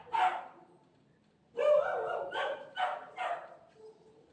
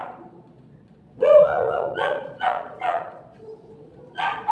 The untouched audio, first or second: first